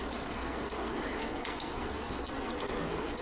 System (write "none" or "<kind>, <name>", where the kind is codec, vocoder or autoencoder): codec, SNAC